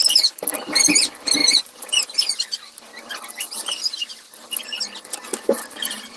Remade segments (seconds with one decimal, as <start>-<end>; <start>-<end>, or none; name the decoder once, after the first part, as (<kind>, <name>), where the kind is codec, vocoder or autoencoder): 1.4-2.2 (vocoder, BigVGAN v2); 2.9-4.8